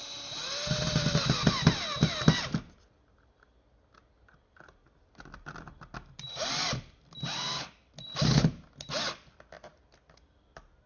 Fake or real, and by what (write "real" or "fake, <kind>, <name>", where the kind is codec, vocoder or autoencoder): real